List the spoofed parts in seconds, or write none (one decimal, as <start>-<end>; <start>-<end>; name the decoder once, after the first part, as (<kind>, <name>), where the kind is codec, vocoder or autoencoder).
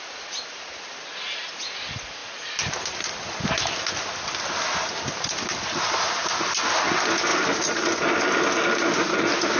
none